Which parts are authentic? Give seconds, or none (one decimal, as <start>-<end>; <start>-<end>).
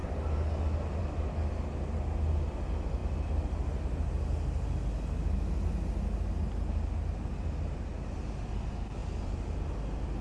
0.0-10.2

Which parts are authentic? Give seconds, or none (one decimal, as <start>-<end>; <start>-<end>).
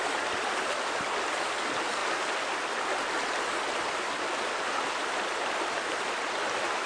0.0-6.9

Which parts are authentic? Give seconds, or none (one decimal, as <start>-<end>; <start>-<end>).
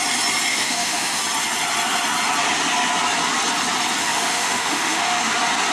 0.0-0.5; 1.2-4.0; 5.3-5.7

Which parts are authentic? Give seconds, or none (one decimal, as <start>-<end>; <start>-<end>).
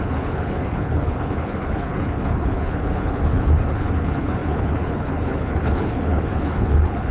none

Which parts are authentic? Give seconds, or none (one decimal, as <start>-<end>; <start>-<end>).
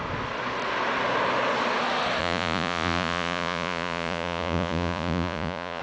0.0-2.2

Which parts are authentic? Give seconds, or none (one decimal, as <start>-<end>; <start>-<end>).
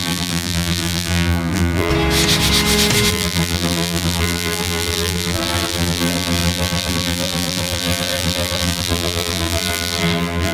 1.9-3.1